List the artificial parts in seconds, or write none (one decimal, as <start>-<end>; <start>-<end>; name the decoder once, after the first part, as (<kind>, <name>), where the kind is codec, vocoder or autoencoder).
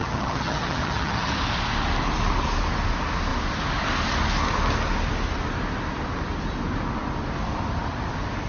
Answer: 0.0-1.3 (vocoder, HiFi-GAN)